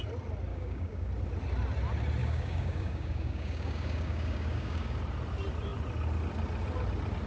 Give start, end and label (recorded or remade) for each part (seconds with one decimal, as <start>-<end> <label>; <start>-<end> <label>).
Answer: 0.0-0.5 recorded; 0.5-1.1 remade; 1.1-2.2 recorded; 2.2-5.0 remade; 5.0-7.3 recorded